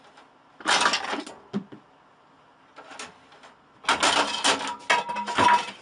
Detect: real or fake real